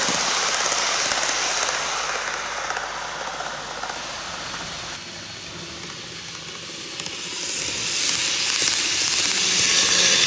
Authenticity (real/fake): real